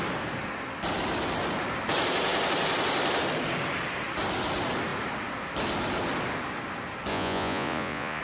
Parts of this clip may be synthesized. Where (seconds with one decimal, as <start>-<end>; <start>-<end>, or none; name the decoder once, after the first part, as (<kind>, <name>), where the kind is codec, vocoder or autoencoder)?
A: 7.1-8.2 (vocoder, Vocos)